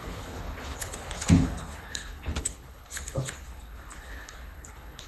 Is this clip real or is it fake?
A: fake